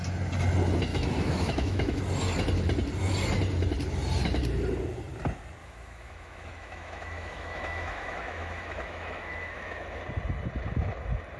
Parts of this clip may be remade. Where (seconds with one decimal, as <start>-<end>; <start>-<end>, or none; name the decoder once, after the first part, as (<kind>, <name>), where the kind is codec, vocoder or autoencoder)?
0.9-2.0 (autoencoder, DAC-VAE); 5.6-10.0